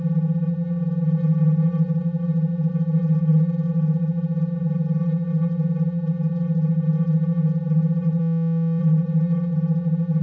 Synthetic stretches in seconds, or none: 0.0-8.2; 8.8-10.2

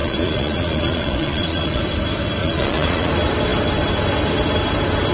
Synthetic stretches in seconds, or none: 0.0-1.8; 2.4-3.1

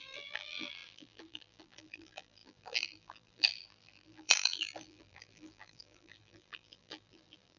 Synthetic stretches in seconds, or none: 0.0-7.6

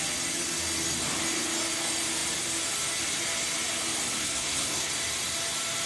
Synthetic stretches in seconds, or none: 4.2-4.9

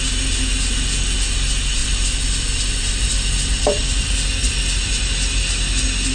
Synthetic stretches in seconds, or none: 1.8-4.9

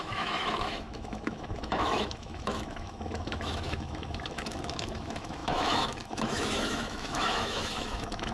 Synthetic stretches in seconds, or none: 0.0-8.3

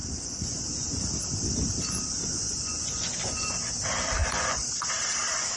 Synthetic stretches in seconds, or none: 0.0-1.0; 2.2-3.6; 4.2-4.7